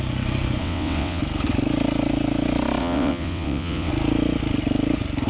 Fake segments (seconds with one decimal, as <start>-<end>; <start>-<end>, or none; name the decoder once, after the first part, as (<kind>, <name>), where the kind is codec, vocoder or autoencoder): 0.6-1.2 (vocoder, WaveNeXt); 2.8-3.9